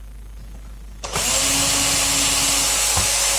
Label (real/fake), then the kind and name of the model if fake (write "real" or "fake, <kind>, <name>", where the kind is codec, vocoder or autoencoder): real